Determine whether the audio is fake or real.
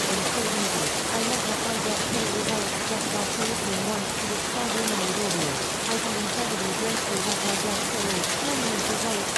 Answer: real